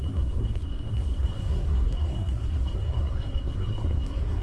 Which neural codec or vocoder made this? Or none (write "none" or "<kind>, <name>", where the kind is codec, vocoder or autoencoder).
codec, SNAC